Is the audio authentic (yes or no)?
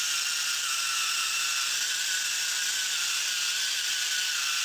yes